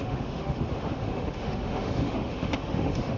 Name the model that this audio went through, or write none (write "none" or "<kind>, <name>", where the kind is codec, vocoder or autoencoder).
autoencoder, DAC-VAE